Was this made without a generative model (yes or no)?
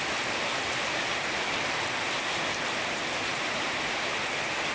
yes